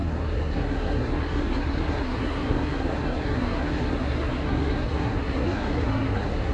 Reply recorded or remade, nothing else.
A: remade